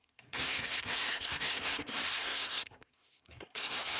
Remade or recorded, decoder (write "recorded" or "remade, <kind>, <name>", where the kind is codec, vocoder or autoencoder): remade, codec, SNAC